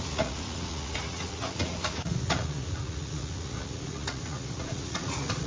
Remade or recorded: remade